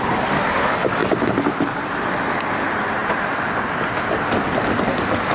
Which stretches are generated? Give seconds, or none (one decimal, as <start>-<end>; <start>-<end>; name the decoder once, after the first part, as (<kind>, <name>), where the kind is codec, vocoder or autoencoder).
none